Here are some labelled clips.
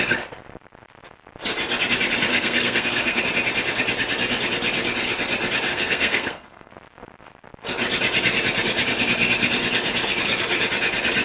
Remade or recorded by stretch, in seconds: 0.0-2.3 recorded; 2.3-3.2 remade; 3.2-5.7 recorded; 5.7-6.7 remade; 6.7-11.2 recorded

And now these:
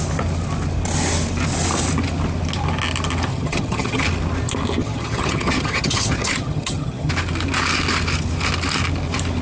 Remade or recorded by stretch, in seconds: 0.0-3.3 recorded; 3.3-4.0 remade; 4.0-4.8 recorded; 4.8-7.1 remade; 7.1-9.4 recorded

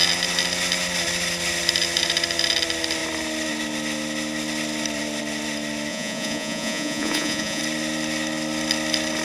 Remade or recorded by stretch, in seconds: 0.0-5.9 recorded; 5.9-7.6 remade; 7.6-9.2 recorded

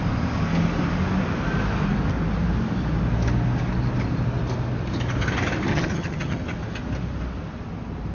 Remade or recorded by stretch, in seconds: 0.0-5.7 recorded; 5.7-6.4 remade; 6.4-8.1 recorded

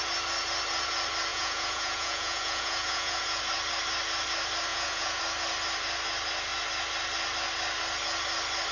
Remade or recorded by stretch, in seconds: 0.0-1.3 recorded; 1.3-3.4 remade; 3.4-4.7 recorded; 4.7-5.2 remade; 5.2-8.7 recorded

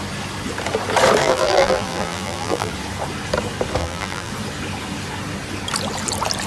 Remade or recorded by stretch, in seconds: 0.0-1.2 recorded; 1.2-2.7 remade; 2.7-3.8 recorded; 3.8-4.3 remade; 4.3-6.5 recorded

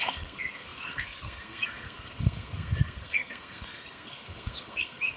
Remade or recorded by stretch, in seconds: 0.0-5.2 remade

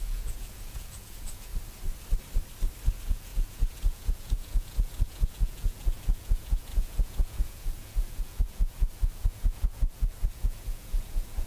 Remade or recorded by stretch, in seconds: 0.0-1.5 remade; 1.5-2.9 recorded; 2.9-11.5 remade